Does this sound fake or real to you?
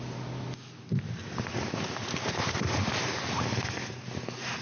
real